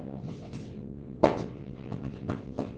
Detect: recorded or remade remade